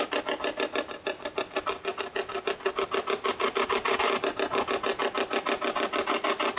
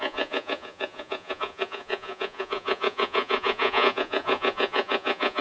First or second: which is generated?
second